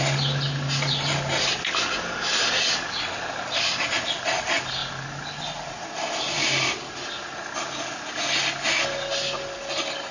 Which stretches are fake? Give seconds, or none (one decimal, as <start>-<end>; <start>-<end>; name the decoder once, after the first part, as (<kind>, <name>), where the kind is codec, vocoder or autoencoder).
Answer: none